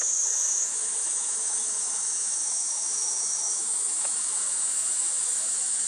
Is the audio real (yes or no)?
no